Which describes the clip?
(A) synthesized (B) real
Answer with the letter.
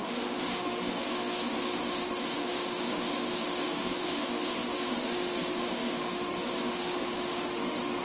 A